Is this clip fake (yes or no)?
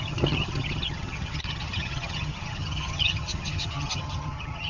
yes